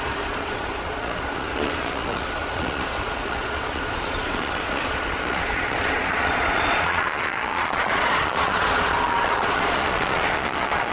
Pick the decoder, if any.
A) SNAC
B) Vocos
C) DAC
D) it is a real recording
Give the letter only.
B